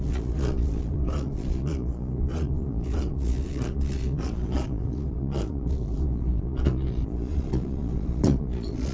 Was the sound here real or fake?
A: fake